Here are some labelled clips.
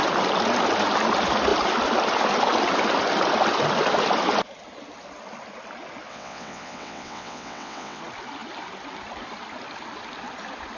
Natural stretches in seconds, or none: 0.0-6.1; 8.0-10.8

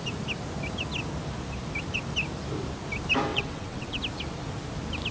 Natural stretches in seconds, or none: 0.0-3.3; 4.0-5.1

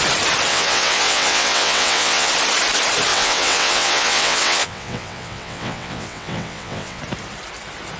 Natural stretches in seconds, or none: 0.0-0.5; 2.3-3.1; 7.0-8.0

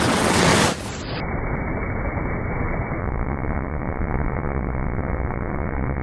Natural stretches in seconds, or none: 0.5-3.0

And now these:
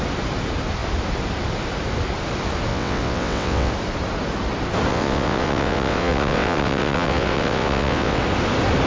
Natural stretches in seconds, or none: 0.0-2.7; 3.7-4.9; 8.2-8.9

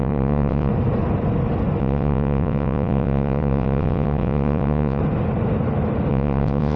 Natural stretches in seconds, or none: 0.7-1.8; 5.0-6.1

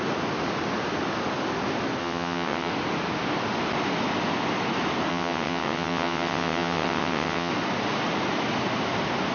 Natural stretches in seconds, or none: 0.0-2.0; 2.7-5.1; 7.5-9.3

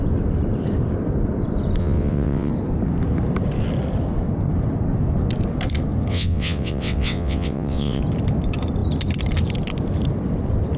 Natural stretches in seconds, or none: 0.0-1.8; 2.5-6.1; 8.0-10.8